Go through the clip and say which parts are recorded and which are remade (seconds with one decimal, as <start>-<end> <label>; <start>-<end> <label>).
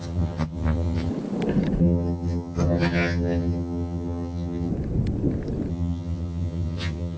0.0-1.1 remade; 1.1-1.8 recorded; 1.8-4.7 remade; 4.7-5.7 recorded; 5.7-7.2 remade